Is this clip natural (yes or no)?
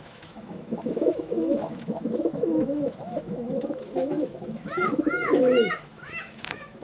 no